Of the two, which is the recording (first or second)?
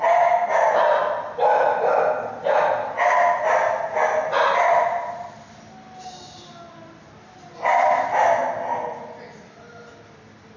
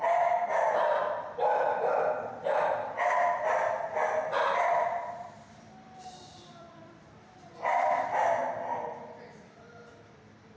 first